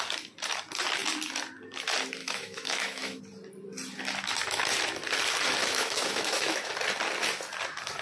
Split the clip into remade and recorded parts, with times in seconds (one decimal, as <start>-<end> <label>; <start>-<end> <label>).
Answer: 0.0-2.2 recorded; 2.2-3.2 remade; 3.2-5.6 recorded; 5.6-6.7 remade; 6.7-8.0 recorded